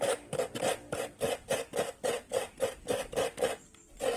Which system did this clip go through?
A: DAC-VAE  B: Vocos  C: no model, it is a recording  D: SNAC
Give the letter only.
C